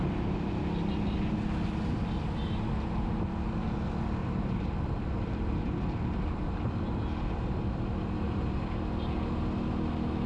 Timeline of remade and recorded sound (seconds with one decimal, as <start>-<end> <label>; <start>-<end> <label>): 0.0-4.2 recorded; 4.2-8.7 remade; 8.7-10.3 recorded